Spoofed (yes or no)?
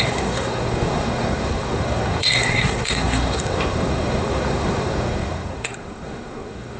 yes